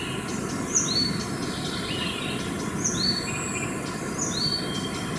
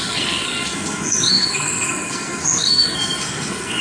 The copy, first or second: second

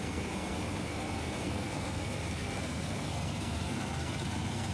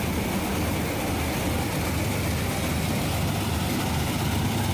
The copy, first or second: first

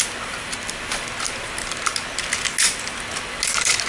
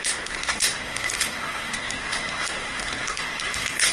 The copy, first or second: second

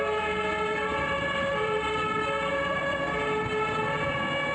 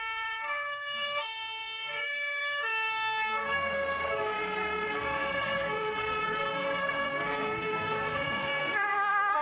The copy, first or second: second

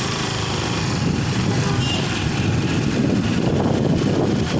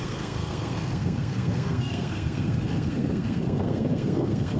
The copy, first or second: second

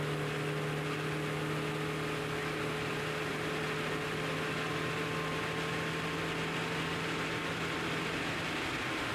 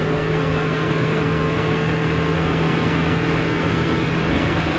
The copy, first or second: second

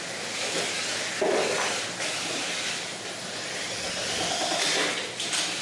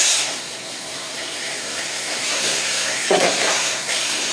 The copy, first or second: second